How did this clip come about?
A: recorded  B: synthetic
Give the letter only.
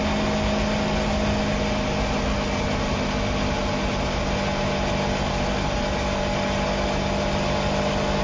A